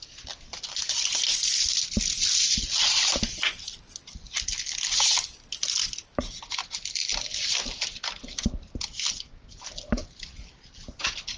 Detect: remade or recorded recorded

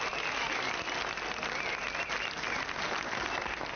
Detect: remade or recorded recorded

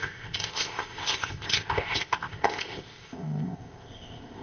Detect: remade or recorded remade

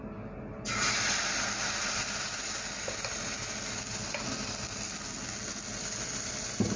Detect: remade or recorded recorded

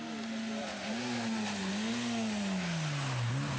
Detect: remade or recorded recorded